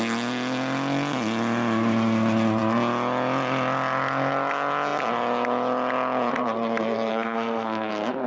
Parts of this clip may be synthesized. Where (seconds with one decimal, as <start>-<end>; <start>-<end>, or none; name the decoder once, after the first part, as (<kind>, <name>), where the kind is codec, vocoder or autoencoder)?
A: 7.1-7.9 (codec, SNAC)